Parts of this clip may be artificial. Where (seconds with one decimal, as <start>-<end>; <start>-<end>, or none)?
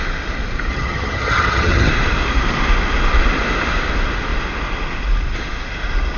0.7-1.9